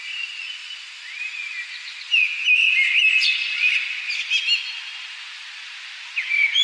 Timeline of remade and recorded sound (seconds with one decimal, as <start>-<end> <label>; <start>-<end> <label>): 0.0-6.6 recorded